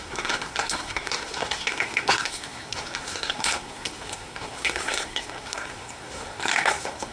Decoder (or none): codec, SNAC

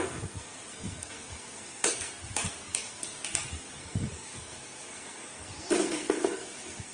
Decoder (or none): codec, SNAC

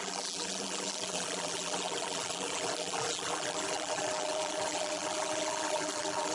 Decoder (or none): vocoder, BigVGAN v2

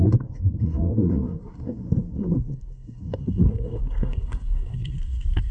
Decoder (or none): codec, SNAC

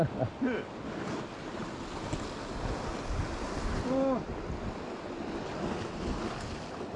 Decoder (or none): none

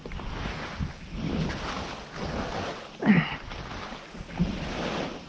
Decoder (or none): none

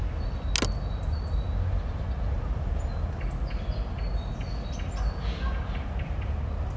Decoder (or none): none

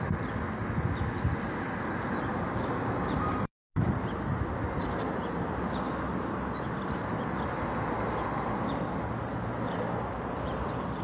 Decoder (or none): none